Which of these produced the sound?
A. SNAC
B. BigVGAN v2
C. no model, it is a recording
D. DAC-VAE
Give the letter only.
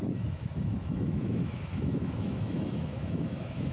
D